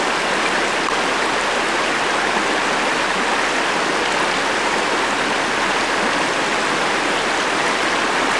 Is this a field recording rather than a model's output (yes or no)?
yes